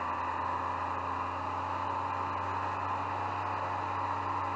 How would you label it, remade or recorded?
recorded